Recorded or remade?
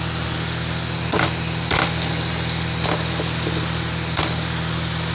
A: recorded